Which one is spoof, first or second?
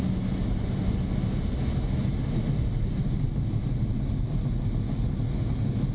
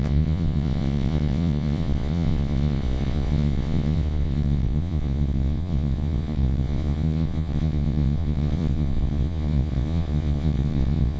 second